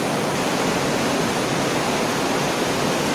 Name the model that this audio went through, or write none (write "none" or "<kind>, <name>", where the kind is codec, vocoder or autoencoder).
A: none